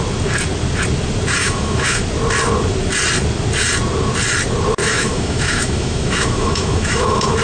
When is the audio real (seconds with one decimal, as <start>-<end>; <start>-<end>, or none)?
0.0-1.4; 2.0-4.8